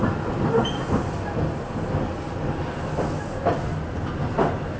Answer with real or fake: real